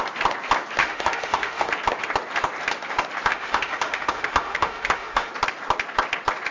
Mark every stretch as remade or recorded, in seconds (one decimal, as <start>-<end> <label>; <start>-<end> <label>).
0.0-0.8 recorded; 0.8-1.7 remade; 1.7-3.3 recorded; 3.3-5.3 remade; 5.3-6.5 recorded